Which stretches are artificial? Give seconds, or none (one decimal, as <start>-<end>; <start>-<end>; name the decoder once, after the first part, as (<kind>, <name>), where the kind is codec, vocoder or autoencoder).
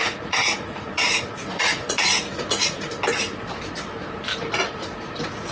0.0-3.0 (vocoder, Vocos)